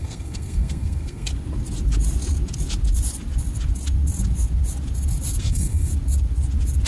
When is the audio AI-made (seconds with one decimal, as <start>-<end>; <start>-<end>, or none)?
0.0-1.3; 5.4-5.9